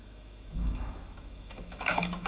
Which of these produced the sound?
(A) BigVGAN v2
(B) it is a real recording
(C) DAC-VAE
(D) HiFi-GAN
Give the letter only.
C